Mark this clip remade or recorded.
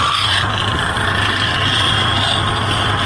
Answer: recorded